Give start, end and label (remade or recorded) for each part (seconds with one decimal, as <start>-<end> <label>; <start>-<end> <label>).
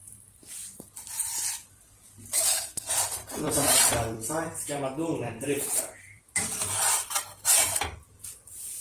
0.0-0.4 remade; 0.4-2.6 recorded; 2.6-8.8 remade